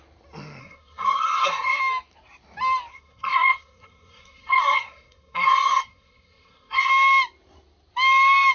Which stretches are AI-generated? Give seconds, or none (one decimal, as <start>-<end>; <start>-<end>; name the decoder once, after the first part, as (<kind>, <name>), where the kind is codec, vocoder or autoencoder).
0.6-1.8 (codec, SNAC); 2.9-6.9